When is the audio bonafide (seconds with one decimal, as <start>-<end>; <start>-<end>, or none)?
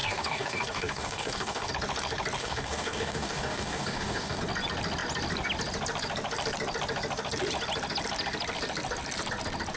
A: 1.7-2.4; 4.4-9.8